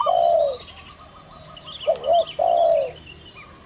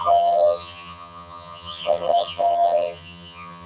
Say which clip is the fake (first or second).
second